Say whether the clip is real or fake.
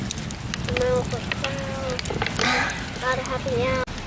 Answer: real